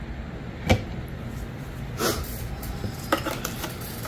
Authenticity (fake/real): real